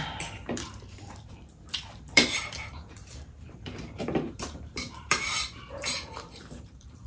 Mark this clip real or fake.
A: fake